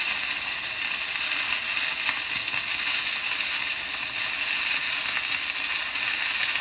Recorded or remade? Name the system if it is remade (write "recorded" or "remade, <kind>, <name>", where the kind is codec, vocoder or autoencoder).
recorded